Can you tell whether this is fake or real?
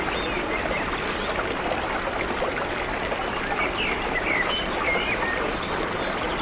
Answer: real